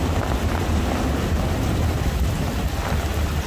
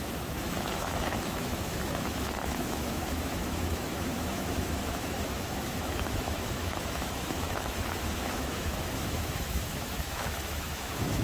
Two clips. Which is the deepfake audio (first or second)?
second